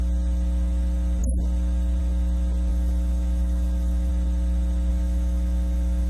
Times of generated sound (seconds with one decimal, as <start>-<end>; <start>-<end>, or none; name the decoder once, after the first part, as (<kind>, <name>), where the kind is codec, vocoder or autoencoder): 2.7-4.1 (autoencoder, DAC-VAE); 4.9-6.1